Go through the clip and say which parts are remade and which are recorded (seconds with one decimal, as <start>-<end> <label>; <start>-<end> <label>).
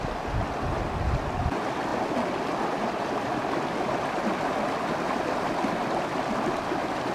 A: 0.0-7.1 recorded